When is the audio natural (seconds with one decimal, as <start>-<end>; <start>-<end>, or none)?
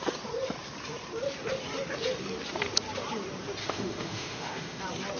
0.0-3.6; 4.8-5.2